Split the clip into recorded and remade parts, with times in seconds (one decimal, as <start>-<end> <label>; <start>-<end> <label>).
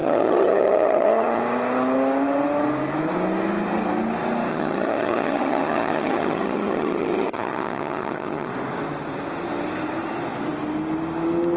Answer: 0.0-1.4 remade; 1.4-4.5 recorded; 4.5-8.5 remade; 8.5-11.6 recorded